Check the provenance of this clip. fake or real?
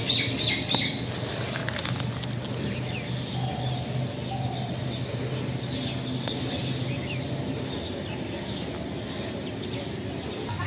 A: real